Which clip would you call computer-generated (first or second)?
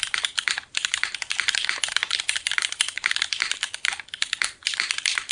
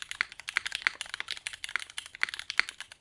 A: first